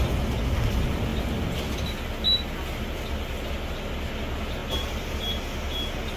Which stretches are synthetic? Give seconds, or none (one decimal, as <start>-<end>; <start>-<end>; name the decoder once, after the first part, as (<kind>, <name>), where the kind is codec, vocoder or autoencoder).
none